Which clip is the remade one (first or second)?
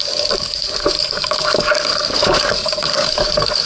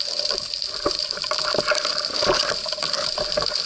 first